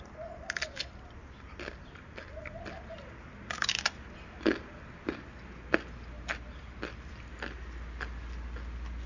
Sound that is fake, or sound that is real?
real